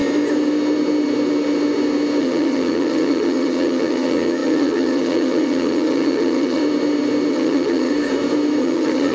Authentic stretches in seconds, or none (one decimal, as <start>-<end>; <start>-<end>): 0.0-2.2; 6.6-7.3; 7.9-8.6